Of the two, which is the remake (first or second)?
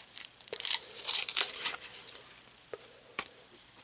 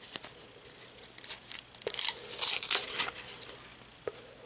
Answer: first